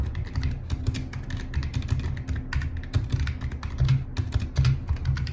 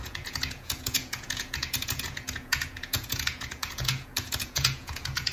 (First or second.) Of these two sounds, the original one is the first